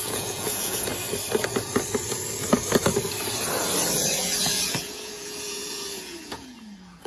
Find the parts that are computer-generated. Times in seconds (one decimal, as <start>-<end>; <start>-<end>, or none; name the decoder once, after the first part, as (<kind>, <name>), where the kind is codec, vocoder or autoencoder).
0.0-0.9 (vocoder, Vocos); 4.2-7.1